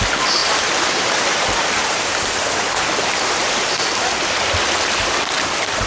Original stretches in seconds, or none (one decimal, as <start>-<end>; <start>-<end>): 0.0-0.4; 3.7-5.9